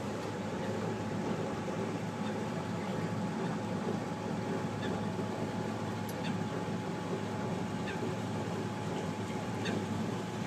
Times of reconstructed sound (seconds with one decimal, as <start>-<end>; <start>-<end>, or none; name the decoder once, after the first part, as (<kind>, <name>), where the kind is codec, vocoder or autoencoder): 0.0-2.9 (vocoder, BigVGAN v2); 7.8-10.5